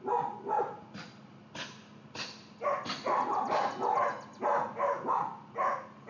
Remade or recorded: recorded